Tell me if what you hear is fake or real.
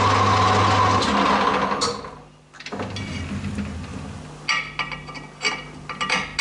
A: real